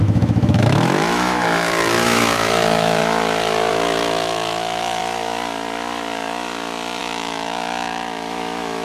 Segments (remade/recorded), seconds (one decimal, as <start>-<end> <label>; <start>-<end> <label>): 0.0-3.0 remade; 3.0-3.7 recorded; 3.7-5.0 remade; 5.0-7.0 recorded; 7.0-8.8 remade